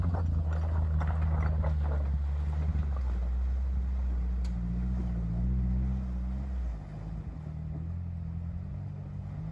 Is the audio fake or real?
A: real